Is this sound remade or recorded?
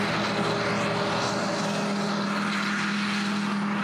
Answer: recorded